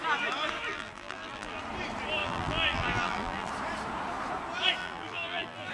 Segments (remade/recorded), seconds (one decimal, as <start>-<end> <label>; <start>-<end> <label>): 0.0-0.7 recorded; 0.7-1.6 remade; 1.6-2.2 recorded; 2.2-3.5 remade; 3.5-4.8 recorded; 4.8-5.7 remade

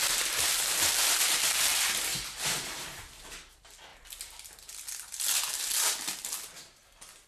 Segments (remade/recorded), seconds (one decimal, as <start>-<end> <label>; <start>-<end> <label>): 0.0-1.7 remade; 1.7-3.0 recorded; 3.0-3.9 remade; 3.9-7.3 recorded

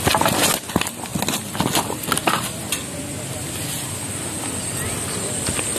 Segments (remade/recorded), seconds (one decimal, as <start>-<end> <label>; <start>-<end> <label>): 0.0-5.8 recorded